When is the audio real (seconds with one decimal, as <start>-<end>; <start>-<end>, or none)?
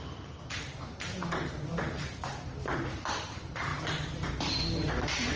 none